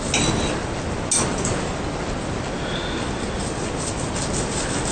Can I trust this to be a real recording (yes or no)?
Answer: yes